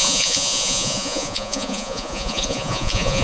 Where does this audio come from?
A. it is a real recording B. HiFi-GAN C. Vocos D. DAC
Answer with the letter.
C